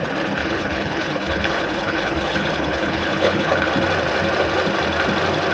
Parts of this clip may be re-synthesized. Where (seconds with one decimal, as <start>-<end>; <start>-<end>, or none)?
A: 0.4-3.7